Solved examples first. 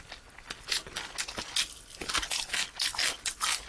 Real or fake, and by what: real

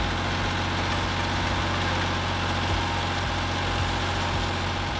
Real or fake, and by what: real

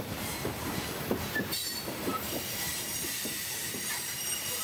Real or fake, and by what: fake, vocoder, BigVGAN v2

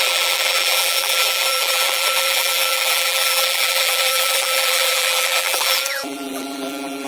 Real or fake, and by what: fake, vocoder, BigVGAN v2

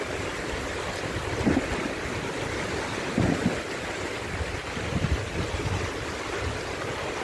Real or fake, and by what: real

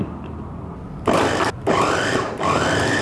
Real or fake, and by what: fake, vocoder, BigVGAN v2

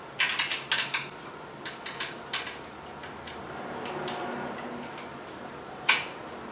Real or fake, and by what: real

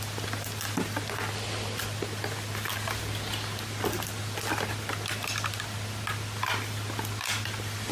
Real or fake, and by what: fake, vocoder, BigVGAN v2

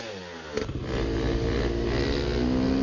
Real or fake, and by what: real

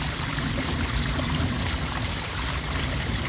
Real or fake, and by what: fake, vocoder, BigVGAN v2